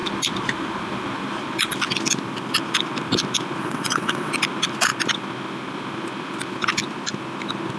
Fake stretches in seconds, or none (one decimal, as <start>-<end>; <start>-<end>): 3.6-4.3